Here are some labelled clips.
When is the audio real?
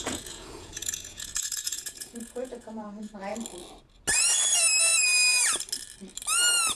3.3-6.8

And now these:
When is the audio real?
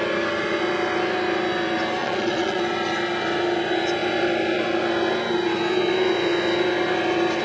0.0-2.0; 2.6-7.4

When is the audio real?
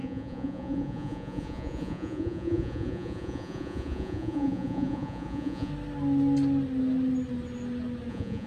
5.7-8.1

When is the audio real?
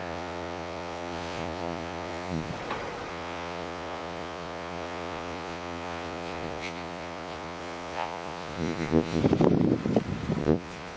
2.5-3.1; 9.2-10.4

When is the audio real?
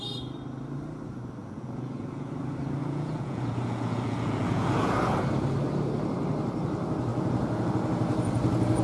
0.0-1.4; 2.3-2.8; 5.2-7.1; 7.7-8.8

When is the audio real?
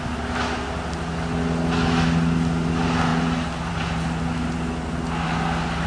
0.0-5.9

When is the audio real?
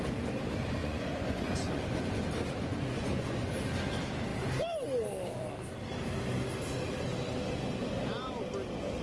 0.0-0.8; 2.1-2.7; 3.5-9.0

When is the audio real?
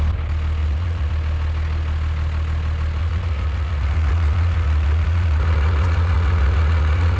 0.0-0.6; 1.1-3.0